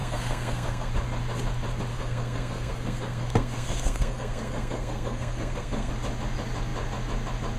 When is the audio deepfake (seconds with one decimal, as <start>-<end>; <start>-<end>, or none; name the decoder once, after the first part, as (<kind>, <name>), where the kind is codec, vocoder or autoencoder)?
0.0-0.9 (codec, SNAC); 1.9-5.9